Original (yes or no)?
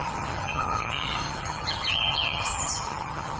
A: no